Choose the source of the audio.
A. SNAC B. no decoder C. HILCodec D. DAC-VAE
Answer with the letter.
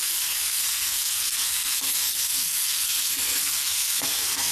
A